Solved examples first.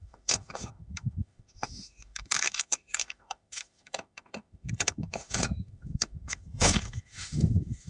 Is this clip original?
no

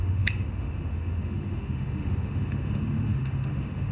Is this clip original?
no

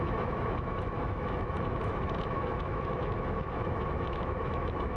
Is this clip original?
no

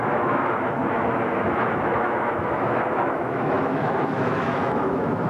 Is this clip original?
no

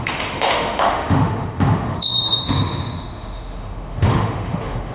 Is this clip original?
no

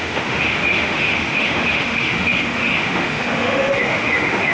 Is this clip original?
no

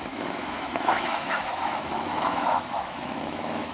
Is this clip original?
no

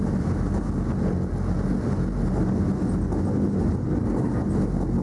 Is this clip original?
yes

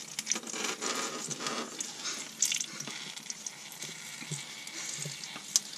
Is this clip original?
yes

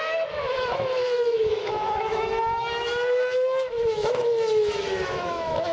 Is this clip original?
no